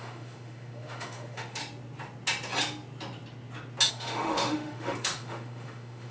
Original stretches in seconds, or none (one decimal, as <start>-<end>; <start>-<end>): 1.6-3.9